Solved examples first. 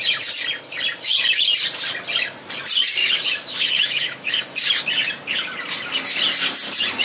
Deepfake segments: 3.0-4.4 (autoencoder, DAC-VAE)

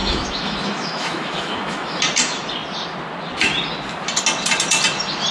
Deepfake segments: 0.0-2.0 (autoencoder, DAC-VAE)

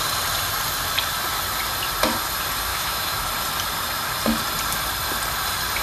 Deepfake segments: 2.7-3.3 (autoencoder, DAC-VAE)